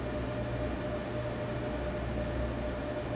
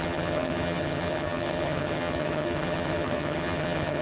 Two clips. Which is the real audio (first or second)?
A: first